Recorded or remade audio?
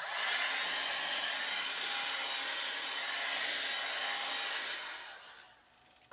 recorded